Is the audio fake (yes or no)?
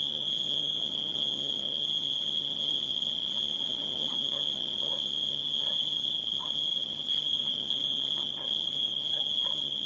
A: yes